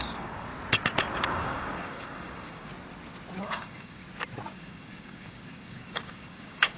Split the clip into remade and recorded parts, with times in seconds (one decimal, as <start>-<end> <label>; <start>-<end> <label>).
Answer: 0.0-0.5 remade; 0.5-1.3 recorded; 1.3-2.7 remade; 2.7-3.4 recorded; 3.4-4.0 remade; 4.0-4.5 recorded; 4.5-6.8 remade